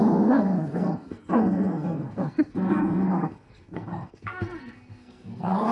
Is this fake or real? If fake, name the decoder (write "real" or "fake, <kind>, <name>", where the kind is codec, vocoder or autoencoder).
fake, codec, SNAC